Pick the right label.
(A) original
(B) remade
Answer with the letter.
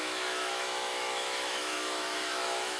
B